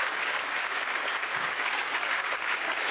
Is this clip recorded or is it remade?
remade